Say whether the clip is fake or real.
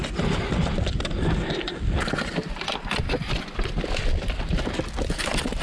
real